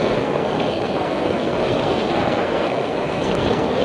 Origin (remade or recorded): remade